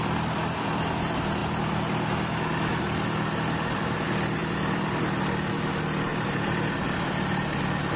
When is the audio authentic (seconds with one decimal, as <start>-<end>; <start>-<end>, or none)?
0.0-4.4; 5.0-6.1; 7.6-8.0